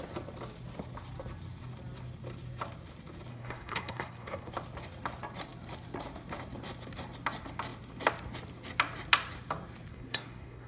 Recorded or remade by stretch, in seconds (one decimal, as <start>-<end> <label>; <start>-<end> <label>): 0.0-3.3 recorded; 3.3-4.5 remade; 4.5-9.9 recorded; 9.9-10.7 remade